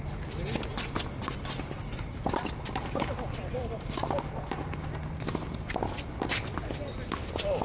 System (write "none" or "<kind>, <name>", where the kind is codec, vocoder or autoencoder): none